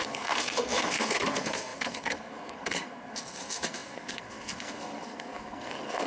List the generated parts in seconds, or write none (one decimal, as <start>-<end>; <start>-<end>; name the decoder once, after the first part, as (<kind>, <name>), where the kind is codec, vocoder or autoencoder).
0.0-6.1 (codec, SNAC)